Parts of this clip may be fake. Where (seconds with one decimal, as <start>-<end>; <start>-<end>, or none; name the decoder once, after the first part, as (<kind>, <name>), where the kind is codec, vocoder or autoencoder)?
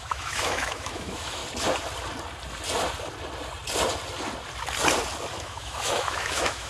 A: 0.0-1.4 (autoencoder, DAC-VAE); 5.4-6.7